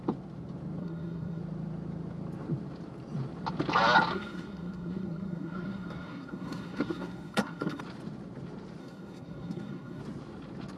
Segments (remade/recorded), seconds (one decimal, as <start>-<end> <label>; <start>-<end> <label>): 0.0-0.8 recorded; 0.8-1.4 remade; 1.4-4.1 recorded; 4.1-7.8 remade; 7.8-8.8 recorded; 8.8-10.0 remade; 10.0-10.8 recorded